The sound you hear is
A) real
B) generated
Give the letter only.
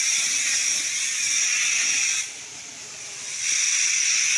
A